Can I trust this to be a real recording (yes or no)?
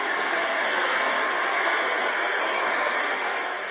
no